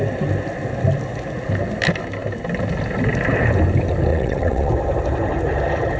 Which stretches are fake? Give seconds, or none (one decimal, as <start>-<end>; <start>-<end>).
4.1-4.7